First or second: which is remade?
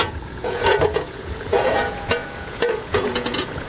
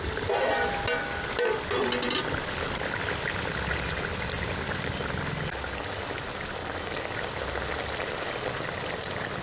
first